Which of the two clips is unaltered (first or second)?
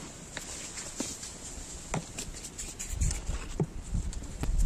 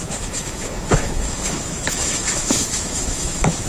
first